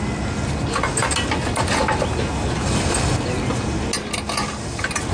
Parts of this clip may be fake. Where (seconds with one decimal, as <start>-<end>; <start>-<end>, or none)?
none